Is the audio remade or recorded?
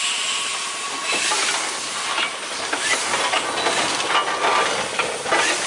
recorded